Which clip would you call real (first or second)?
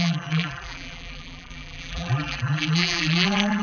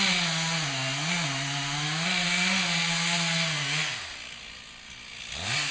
second